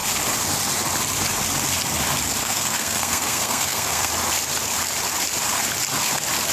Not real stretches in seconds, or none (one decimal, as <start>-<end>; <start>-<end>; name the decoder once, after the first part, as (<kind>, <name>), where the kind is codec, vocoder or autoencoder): 2.4-4.1 (codec, SNAC)